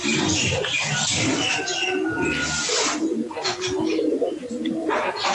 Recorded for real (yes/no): yes